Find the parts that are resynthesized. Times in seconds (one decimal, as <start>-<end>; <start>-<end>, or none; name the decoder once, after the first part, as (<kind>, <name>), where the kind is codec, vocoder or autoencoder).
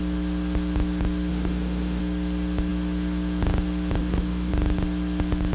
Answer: 1.3-2.0 (autoencoder, DAC-VAE); 4.0-4.5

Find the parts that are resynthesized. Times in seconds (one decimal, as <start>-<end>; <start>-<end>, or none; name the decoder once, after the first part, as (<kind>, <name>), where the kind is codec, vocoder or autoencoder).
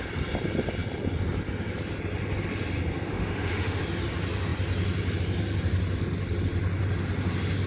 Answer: 3.1-3.8 (autoencoder, DAC-VAE)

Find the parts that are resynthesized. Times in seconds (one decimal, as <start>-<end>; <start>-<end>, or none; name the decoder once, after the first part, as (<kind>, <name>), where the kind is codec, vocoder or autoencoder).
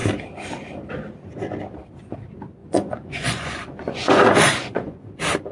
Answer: 2.6-5.1 (vocoder, Vocos)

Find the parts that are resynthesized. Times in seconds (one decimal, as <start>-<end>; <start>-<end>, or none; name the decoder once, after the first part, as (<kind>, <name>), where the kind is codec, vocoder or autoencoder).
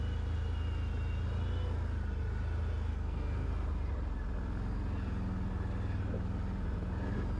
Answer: 2.9-3.5 (codec, SNAC)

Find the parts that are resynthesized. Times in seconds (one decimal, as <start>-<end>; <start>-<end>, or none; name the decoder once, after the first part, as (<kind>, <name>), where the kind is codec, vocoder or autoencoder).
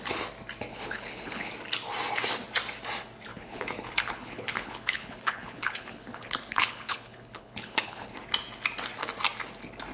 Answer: 0.7-1.5 (codec, HILCodec); 3.3-8.1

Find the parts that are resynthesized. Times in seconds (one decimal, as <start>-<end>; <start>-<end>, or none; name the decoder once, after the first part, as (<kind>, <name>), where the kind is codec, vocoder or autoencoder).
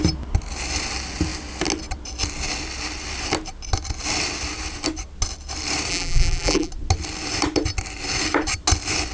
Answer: 5.9-6.7 (vocoder, BigVGAN v2)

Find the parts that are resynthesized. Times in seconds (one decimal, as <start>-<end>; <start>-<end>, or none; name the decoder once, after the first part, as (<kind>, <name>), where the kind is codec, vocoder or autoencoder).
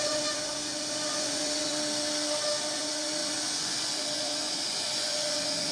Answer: 0.0-1.7 (vocoder, Vocos); 2.7-5.7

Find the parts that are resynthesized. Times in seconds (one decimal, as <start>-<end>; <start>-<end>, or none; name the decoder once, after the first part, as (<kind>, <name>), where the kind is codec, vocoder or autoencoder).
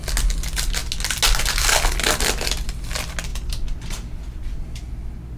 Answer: 3.3-4.9 (vocoder, BigVGAN v2)